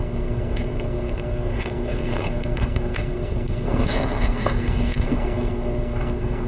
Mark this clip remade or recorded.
remade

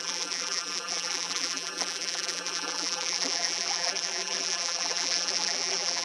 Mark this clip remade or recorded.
remade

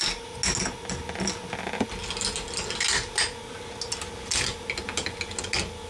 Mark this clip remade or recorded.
recorded